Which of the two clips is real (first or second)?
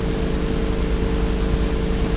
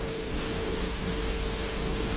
first